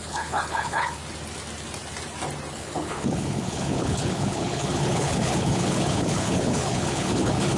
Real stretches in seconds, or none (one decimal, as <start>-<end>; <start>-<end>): 1.0-2.5